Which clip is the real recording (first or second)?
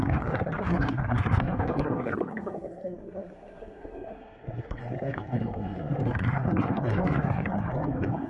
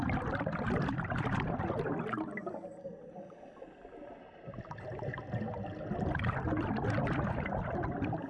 second